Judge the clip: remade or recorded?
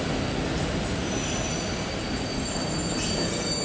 recorded